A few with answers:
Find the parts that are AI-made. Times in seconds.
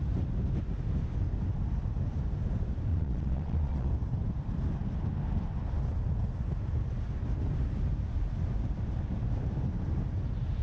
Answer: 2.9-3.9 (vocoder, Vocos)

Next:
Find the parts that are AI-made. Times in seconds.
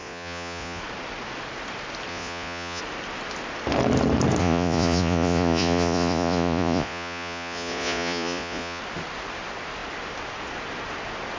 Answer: 0.0-0.8 (vocoder, Vocos); 2.1-2.8; 4.4-8.8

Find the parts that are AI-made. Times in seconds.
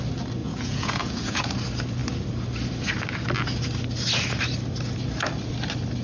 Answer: 0.4-1.6 (vocoder, Vocos)